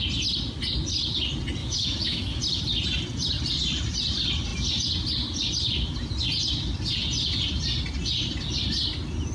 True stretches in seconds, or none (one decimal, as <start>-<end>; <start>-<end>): 0.0-1.6; 2.4-9.3